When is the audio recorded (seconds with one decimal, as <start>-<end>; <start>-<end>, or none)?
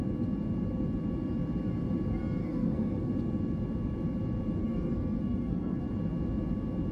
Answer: 0.0-2.4; 3.1-4.6; 5.8-6.9